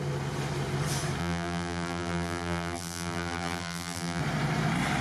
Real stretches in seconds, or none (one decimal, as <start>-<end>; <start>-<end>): 0.0-1.2; 4.2-5.0